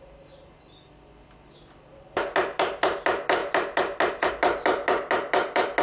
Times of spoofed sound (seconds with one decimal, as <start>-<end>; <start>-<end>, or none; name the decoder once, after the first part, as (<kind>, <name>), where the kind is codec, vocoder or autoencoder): none